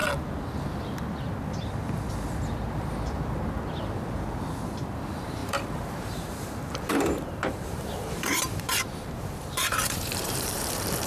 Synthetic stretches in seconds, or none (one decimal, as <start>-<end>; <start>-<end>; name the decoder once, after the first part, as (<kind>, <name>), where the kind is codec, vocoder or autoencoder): 5.4-10.7 (vocoder, BigVGAN v2)